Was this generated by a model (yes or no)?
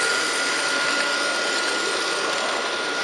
no